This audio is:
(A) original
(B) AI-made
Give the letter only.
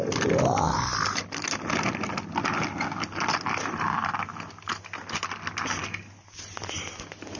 A